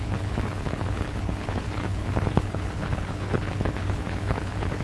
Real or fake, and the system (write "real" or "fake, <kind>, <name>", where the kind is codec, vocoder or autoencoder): fake, codec, HILCodec